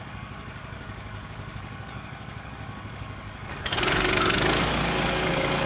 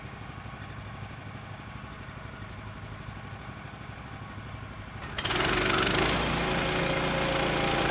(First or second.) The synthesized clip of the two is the first